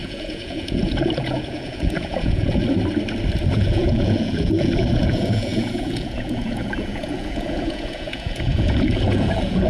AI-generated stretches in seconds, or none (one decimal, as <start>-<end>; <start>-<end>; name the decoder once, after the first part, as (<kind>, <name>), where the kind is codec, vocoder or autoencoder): 0.0-2.6 (vocoder, Vocos); 3.5-9.7